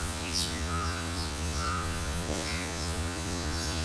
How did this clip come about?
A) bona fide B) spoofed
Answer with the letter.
B